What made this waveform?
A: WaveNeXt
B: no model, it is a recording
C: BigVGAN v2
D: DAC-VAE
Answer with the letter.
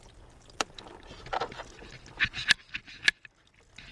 B